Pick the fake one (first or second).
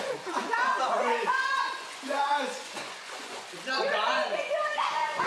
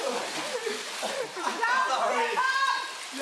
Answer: first